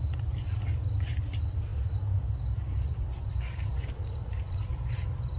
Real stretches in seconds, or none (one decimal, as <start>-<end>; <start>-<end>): 0.0-5.4